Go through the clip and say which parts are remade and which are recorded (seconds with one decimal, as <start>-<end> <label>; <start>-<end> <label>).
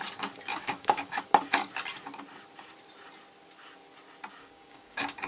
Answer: 0.0-0.5 recorded; 0.5-1.2 remade; 1.2-4.4 recorded; 4.4-5.3 remade